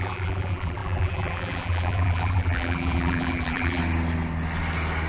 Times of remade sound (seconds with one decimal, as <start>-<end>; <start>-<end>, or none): 0.0-3.8